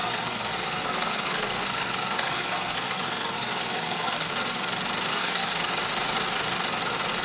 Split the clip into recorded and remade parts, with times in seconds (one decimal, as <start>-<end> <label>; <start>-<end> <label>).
0.0-4.3 remade; 4.3-5.1 recorded; 5.1-5.7 remade; 5.7-7.2 recorded